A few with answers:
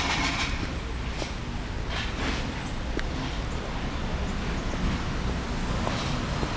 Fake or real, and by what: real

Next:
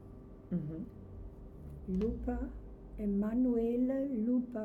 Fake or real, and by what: real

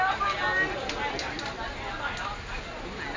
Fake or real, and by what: real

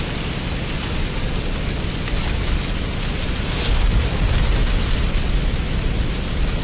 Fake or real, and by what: real